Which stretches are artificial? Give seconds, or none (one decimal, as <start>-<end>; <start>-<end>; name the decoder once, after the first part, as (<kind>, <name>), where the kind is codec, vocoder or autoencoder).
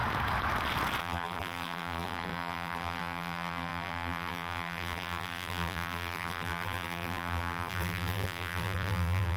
1.0-9.4 (vocoder, BigVGAN v2)